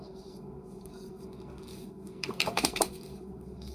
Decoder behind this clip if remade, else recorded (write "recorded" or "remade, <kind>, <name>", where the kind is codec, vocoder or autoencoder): remade, codec, SNAC